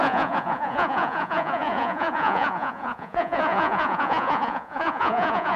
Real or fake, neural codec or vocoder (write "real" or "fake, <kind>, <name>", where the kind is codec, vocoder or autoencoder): fake, vocoder, Vocos